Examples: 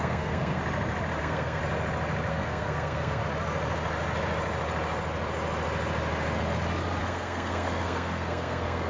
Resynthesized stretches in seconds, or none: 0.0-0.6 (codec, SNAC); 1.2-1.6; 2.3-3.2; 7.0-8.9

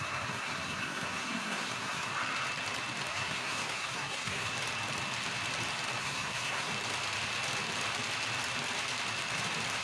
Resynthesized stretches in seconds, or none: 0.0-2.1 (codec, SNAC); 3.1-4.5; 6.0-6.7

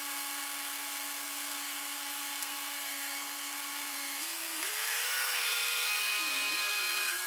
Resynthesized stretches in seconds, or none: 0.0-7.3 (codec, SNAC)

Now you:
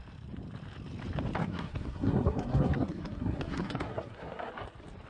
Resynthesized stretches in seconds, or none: 1.4-4.5 (codec, SNAC)

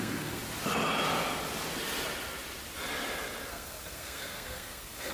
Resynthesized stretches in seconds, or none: 0.0-0.4 (codec, SNAC); 3.5-5.1